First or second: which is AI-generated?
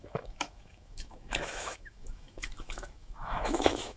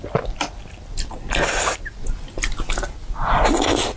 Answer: first